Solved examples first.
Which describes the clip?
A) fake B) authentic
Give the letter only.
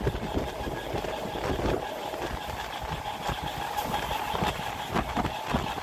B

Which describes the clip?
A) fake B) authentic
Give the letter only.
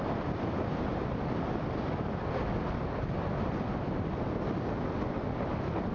B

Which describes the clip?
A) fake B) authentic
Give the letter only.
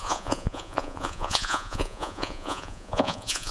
A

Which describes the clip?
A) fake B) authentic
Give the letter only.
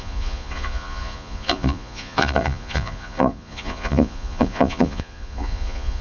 A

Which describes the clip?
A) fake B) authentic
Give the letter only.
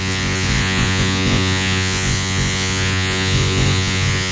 A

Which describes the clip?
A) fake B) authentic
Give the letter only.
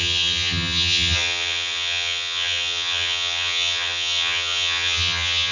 A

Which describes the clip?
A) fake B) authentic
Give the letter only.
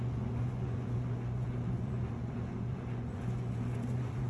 A